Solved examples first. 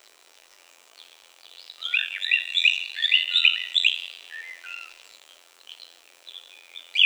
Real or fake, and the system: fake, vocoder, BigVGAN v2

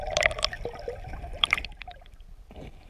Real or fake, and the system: fake, vocoder, BigVGAN v2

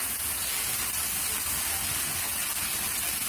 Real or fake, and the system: real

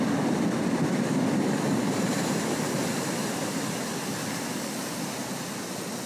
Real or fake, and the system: real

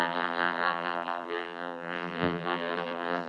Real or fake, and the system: fake, vocoder, BigVGAN v2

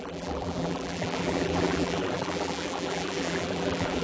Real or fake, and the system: fake, vocoder, BigVGAN v2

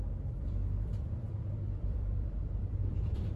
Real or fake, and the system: fake, vocoder, BigVGAN v2